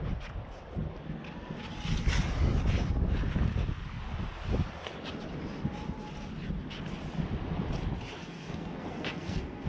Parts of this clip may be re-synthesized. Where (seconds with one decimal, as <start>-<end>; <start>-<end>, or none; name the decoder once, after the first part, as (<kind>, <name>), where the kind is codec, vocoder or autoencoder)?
8.2-9.7 (codec, SNAC)